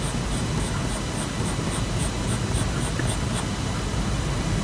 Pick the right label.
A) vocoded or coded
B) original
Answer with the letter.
B